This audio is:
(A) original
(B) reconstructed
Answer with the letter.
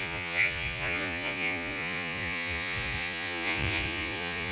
B